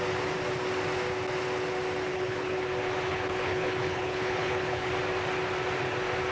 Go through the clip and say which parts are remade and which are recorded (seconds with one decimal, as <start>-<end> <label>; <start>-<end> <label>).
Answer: 0.0-2.1 recorded; 2.1-2.6 remade; 2.6-3.1 recorded; 3.1-4.9 remade; 4.9-6.3 recorded